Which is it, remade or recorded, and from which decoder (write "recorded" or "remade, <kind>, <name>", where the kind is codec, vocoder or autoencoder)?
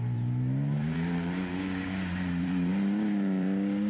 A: remade, vocoder, BigVGAN v2